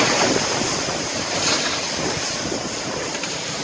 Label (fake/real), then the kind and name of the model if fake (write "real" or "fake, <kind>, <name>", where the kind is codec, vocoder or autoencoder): real